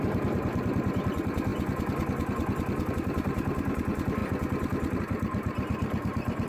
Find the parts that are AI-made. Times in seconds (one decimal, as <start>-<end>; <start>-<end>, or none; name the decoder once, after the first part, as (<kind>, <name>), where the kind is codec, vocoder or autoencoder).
0.0-1.5 (vocoder, BigVGAN v2); 2.9-4.2; 5.0-6.5